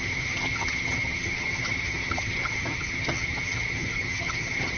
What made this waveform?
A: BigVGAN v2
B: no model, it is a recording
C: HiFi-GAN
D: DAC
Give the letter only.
C